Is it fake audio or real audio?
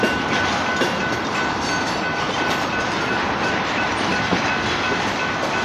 fake